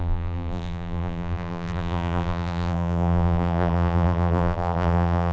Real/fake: fake